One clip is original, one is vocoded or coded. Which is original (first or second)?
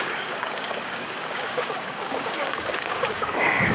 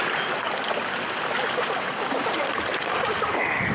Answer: second